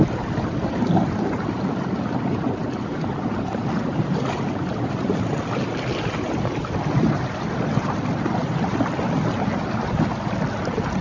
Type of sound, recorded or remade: recorded